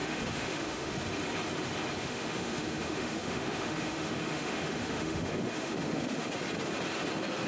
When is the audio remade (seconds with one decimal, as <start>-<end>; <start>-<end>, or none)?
0.0-0.9; 2.0-6.3